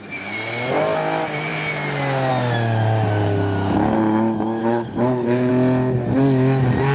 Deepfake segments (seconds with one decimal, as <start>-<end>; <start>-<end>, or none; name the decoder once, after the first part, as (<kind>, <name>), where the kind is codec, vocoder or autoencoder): 4.6-5.5 (codec, HILCodec)